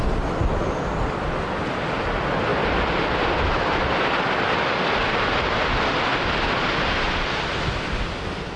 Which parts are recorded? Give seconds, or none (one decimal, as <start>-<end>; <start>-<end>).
0.0-6.1; 7.8-8.6